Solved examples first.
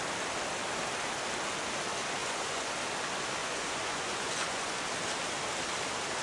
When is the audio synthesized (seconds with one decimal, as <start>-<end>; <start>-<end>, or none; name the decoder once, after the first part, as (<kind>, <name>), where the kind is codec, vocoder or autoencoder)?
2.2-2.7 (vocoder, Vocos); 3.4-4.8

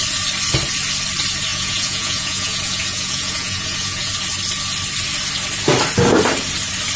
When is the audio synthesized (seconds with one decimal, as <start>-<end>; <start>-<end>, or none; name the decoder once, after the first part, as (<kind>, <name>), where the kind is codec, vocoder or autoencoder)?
1.5-4.1 (vocoder, Vocos)

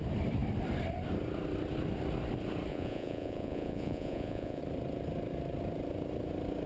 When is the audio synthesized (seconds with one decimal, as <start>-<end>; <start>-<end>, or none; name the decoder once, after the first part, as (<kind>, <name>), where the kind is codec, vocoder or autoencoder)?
2.7-4.6 (vocoder, Vocos)

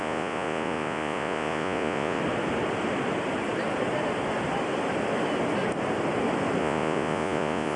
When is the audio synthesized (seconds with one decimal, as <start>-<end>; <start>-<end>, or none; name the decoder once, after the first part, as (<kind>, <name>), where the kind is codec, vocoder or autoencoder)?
0.0-2.2 (vocoder, Vocos); 6.6-7.8

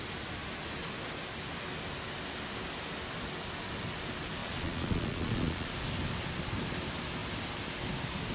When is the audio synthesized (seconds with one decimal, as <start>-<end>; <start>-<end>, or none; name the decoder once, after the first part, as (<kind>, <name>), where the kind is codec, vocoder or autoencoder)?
4.4-5.7 (vocoder, Vocos)